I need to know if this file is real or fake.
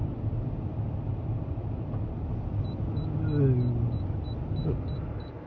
real